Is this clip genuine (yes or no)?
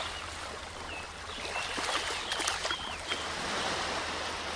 yes